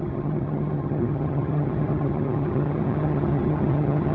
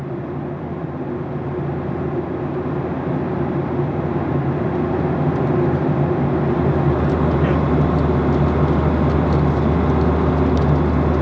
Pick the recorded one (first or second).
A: second